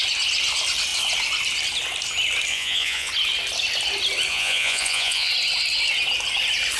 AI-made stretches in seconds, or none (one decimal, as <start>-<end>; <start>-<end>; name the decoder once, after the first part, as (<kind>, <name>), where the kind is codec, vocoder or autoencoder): 2.5-3.1 (vocoder, Vocos); 4.3-5.3